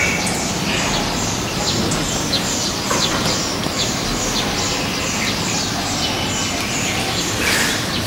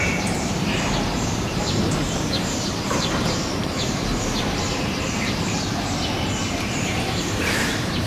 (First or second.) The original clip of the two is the first